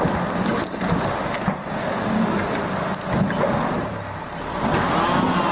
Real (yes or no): yes